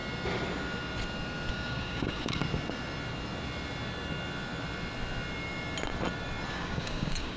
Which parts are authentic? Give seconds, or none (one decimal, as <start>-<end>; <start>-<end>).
0.0-1.5; 2.4-6.5